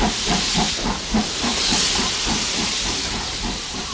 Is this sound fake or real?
fake